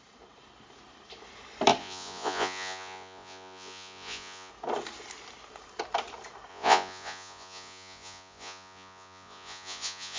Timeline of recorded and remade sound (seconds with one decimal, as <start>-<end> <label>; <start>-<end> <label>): 0.0-1.8 recorded; 1.8-4.5 remade; 4.5-6.5 recorded; 6.5-10.2 remade